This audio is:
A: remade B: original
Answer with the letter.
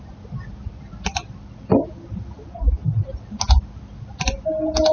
B